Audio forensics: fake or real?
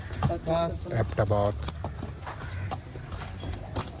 real